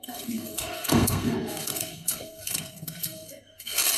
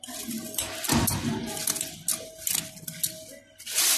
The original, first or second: second